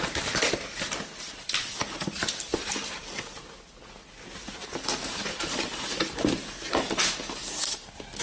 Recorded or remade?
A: recorded